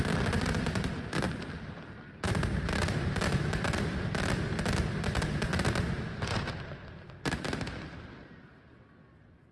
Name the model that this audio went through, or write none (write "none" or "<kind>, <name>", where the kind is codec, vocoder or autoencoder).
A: none